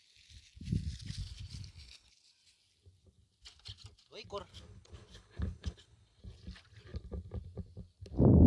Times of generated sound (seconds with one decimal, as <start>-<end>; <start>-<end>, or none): 1.2-2.1; 4.5-6.2